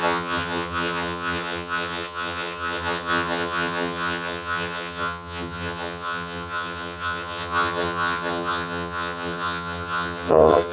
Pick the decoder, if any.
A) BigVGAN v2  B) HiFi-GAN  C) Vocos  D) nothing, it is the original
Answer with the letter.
B